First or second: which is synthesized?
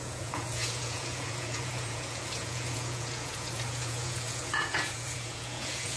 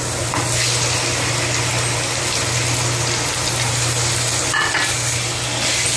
first